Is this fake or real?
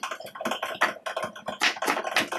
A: real